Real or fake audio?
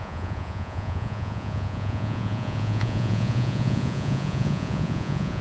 fake